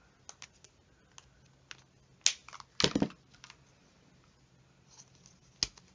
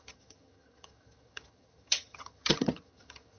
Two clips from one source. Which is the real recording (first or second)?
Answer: first